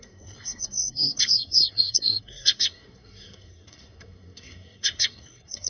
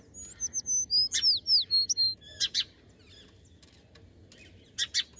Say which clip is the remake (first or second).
first